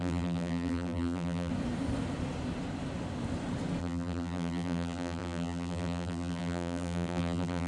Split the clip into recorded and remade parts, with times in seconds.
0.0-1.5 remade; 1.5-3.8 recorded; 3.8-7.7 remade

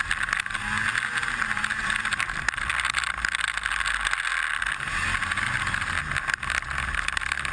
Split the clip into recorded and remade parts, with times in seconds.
0.0-7.5 recorded

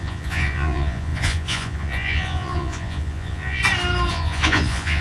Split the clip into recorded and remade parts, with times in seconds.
0.0-3.6 remade; 3.6-4.1 recorded; 4.1-5.0 remade

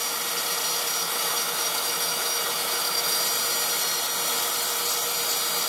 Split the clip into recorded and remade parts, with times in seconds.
0.0-1.0 recorded; 1.0-3.2 remade; 3.2-5.7 recorded

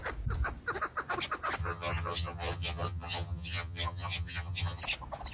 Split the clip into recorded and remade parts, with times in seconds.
0.0-1.6 recorded; 1.6-4.8 remade; 4.8-5.3 recorded

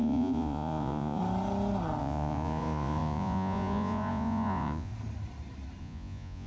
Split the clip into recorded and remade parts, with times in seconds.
0.0-1.2 remade; 1.2-2.0 recorded; 2.0-4.9 remade; 4.9-5.8 recorded; 5.8-6.5 remade

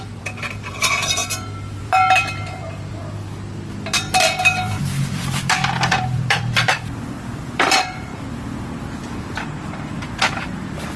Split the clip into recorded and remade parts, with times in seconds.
0.0-1.2 remade; 1.2-1.8 recorded; 1.8-3.0 remade; 3.0-4.5 recorded; 4.5-8.1 remade; 8.1-10.4 recorded; 10.4-11.0 remade

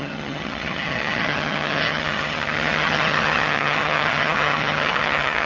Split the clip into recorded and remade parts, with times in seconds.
0.0-5.5 remade